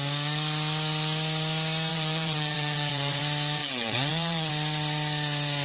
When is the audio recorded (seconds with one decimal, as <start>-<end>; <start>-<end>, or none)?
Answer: 0.0-1.9; 3.2-3.6; 4.5-5.6

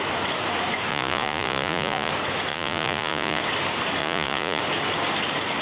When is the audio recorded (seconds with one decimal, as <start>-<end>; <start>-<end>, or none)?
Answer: 0.0-0.9; 2.1-2.5; 3.4-4.0; 4.6-5.6